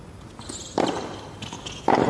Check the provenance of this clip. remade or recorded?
recorded